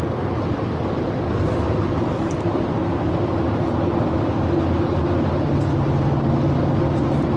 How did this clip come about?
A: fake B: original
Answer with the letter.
B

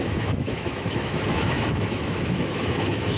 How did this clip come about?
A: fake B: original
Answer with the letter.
A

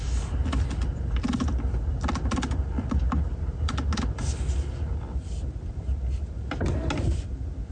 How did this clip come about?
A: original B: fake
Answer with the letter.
A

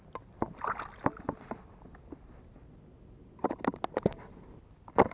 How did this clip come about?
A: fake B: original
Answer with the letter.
B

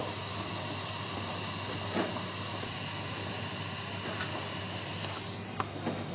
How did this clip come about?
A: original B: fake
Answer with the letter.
A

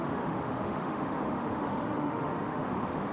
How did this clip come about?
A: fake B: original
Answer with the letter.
A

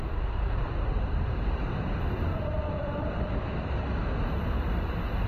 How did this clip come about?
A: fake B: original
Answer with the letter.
A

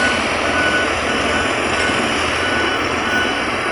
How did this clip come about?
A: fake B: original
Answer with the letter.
B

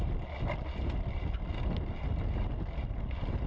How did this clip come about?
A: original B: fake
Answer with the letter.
A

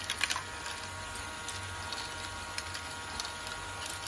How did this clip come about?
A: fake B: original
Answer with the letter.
B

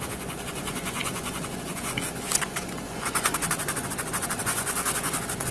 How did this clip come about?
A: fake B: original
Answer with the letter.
A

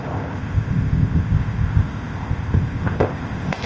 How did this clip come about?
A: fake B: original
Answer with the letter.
A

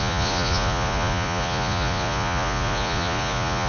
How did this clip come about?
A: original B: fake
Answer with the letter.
B